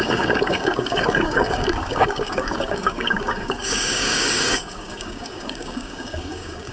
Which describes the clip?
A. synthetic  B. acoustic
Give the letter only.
A